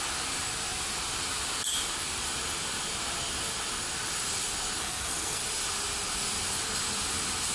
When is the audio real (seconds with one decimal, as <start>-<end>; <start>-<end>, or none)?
0.0-4.8; 5.4-7.5